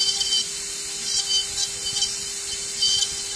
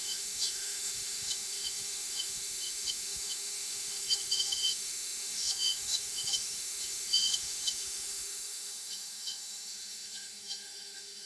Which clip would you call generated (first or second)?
second